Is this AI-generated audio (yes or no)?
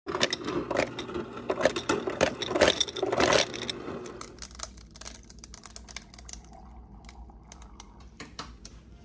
no